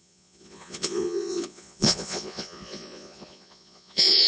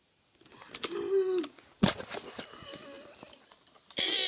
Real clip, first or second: second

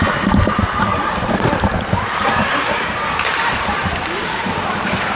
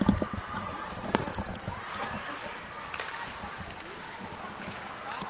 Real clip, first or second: second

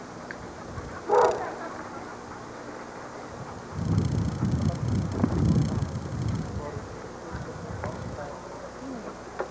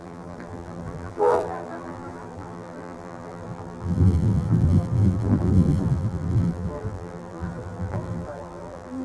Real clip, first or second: first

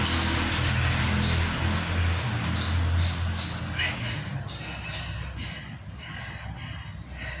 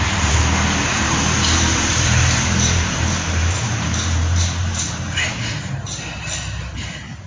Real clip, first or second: first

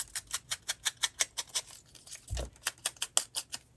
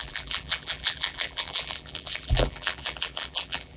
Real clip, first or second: first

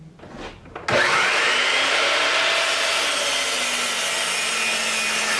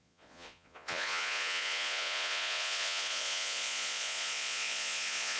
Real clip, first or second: first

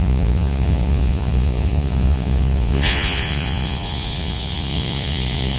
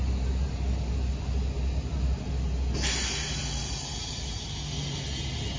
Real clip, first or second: second